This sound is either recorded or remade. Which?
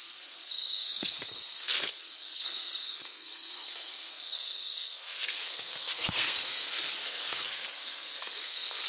remade